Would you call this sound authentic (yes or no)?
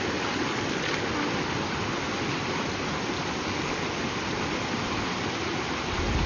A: yes